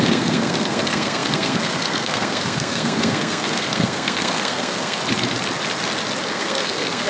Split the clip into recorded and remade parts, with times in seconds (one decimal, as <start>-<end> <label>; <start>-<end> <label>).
0.0-5.0 remade; 5.0-6.3 recorded; 6.3-7.1 remade